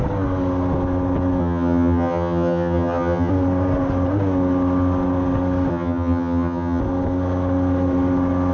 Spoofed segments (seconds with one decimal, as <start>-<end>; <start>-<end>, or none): 1.4-3.3; 5.7-6.8